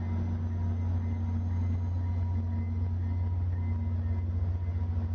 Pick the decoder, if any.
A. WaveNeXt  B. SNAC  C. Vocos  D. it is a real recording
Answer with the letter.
D